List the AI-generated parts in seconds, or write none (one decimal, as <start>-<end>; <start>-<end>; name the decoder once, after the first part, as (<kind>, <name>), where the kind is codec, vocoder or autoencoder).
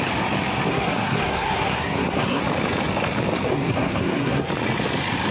0.7-2.4 (codec, SNAC); 3.5-4.5